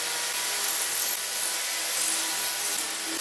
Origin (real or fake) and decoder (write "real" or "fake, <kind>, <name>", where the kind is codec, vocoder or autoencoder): real